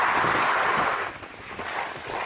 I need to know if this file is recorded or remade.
recorded